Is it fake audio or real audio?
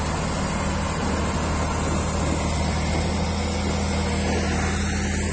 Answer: real